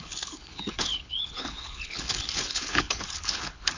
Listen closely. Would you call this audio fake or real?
fake